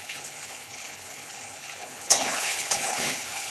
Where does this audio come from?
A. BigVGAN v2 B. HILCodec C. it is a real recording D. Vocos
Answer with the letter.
B